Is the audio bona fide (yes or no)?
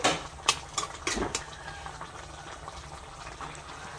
yes